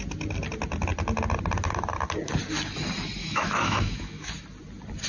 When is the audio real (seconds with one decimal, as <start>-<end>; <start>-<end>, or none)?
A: 0.0-3.2; 4.3-5.1